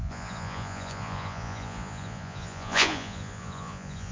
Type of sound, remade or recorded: remade